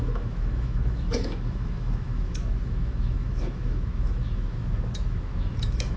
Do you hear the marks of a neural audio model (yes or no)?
yes